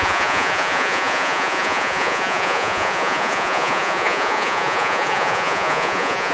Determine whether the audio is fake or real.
fake